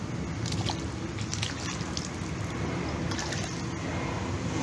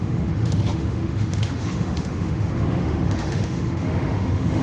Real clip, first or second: first